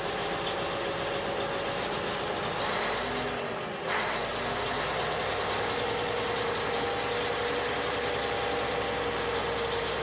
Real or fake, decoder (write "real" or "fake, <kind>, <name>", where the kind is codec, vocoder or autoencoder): real